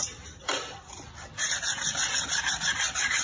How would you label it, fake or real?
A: real